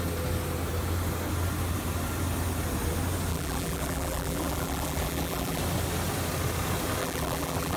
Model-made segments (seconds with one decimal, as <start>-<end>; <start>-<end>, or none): 3.3-5.6; 7.0-7.8